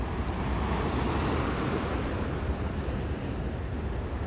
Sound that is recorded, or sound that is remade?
recorded